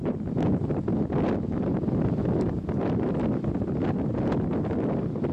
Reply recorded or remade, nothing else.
recorded